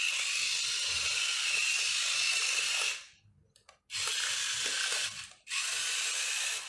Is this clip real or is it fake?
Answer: real